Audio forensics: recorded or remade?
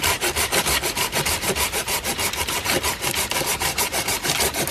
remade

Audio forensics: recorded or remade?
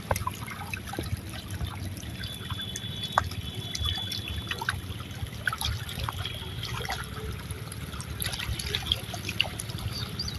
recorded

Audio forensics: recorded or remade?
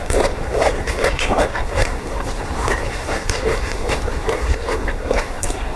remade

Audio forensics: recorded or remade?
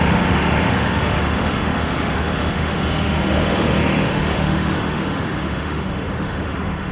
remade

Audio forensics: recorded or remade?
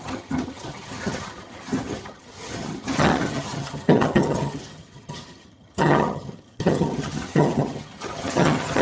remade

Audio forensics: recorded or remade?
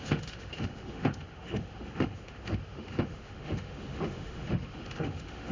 remade